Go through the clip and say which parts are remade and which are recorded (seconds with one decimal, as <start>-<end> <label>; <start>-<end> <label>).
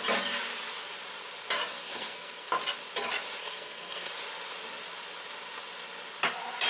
0.0-1.7 recorded; 1.7-2.5 remade; 2.5-3.4 recorded; 3.4-4.1 remade; 4.1-6.7 recorded